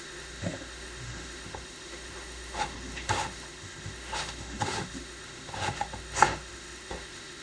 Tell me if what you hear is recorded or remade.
remade